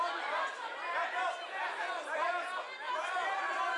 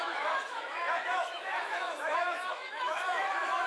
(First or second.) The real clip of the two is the first